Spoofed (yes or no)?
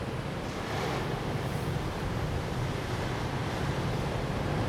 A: yes